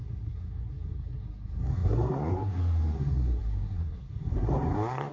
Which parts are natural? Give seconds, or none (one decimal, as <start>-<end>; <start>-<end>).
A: none